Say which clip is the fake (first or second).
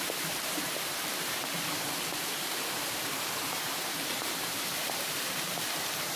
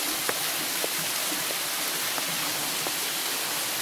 first